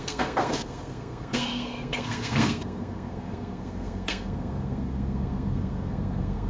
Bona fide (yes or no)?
no